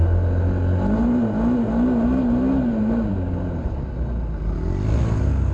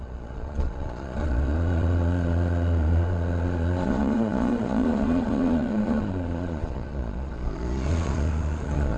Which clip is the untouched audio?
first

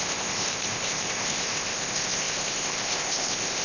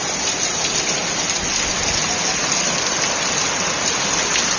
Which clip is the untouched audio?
second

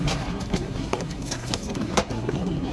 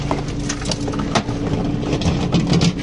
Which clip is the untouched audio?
second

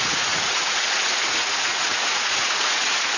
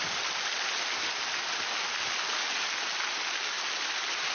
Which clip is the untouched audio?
second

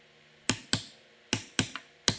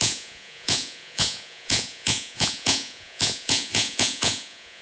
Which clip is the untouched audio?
first